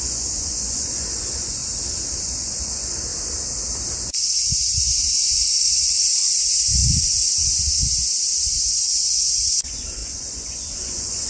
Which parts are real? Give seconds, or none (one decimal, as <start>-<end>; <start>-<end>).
1.6-2.2; 3.1-4.0